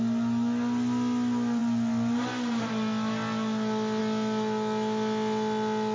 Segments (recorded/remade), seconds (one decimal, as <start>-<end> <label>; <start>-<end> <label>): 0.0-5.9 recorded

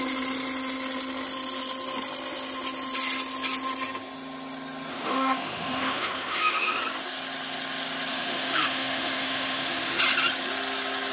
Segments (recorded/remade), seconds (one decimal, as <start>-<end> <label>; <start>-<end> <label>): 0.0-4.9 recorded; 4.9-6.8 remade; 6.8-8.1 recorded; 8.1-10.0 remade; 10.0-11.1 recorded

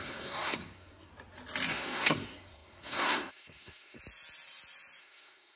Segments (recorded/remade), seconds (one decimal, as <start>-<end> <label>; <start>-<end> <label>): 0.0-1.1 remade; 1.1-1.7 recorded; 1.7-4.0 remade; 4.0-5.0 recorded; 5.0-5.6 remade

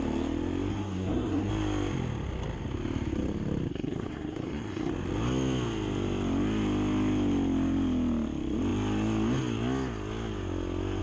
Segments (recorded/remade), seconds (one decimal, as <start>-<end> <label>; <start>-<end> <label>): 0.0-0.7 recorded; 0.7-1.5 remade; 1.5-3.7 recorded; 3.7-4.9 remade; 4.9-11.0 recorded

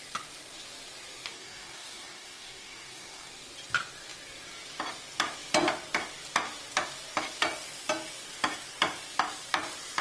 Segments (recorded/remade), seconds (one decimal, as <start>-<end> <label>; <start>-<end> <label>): 0.0-1.3 recorded; 1.3-3.3 remade; 3.3-10.0 recorded